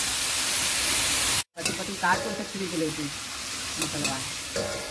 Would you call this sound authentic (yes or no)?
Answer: no